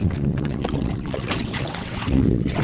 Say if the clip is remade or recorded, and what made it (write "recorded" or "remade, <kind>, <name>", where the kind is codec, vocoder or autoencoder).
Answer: remade, vocoder, WaveNeXt